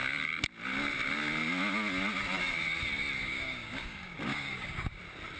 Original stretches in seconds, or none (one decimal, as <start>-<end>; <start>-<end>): 0.0-3.2; 5.0-5.4